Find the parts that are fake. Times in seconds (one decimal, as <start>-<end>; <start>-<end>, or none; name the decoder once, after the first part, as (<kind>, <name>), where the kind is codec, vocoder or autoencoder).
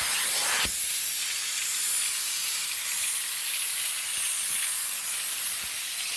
none